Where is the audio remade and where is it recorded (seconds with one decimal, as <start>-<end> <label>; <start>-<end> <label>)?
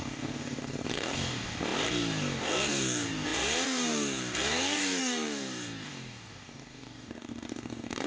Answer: 0.0-8.1 remade